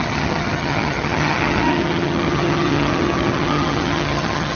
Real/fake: fake